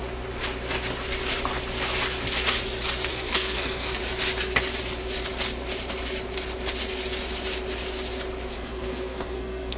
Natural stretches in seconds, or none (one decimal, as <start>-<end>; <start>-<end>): 0.0-3.1; 4.0-8.5